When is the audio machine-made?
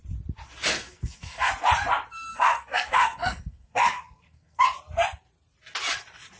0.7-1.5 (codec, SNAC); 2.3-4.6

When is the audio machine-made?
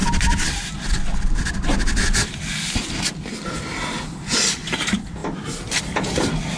5.2-6.6 (vocoder, BigVGAN v2)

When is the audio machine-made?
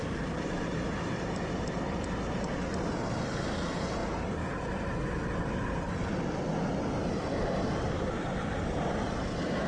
7.0-8.9 (vocoder, BigVGAN v2)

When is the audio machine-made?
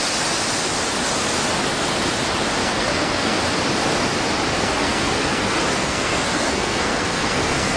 2.6-3.4 (codec, SNAC); 4.5-7.8